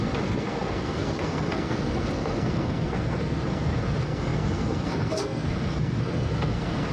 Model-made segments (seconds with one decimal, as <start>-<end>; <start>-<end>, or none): 0.0-6.9